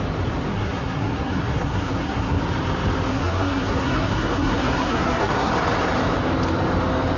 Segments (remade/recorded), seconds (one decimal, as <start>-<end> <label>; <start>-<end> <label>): 0.0-0.5 recorded; 0.5-2.4 remade; 2.4-3.1 recorded; 3.1-5.5 remade; 5.5-7.2 recorded

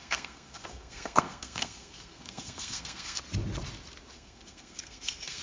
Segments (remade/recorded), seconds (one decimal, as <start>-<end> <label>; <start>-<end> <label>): 0.0-3.2 remade; 3.2-4.1 recorded; 4.1-5.4 remade